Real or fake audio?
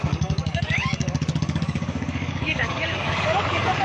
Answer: fake